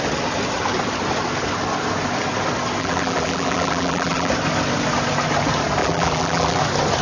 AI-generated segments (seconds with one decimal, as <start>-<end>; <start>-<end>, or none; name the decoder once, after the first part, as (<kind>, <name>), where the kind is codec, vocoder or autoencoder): 2.8-4.3 (vocoder, BigVGAN v2); 5.8-6.6